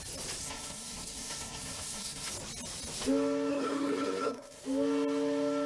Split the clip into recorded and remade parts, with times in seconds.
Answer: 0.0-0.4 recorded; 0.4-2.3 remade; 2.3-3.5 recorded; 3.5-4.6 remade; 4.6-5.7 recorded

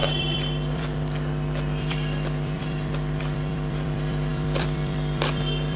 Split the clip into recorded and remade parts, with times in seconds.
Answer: 0.0-5.8 remade